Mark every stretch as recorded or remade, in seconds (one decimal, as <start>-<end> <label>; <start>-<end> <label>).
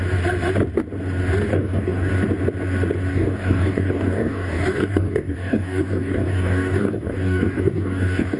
0.0-1.5 recorded; 1.5-2.1 remade; 2.1-3.1 recorded; 3.1-8.4 remade